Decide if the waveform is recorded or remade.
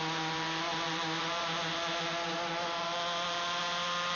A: remade